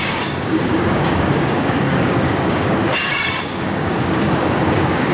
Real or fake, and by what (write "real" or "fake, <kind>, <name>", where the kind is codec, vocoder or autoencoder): fake, codec, DAC